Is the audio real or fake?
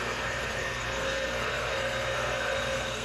fake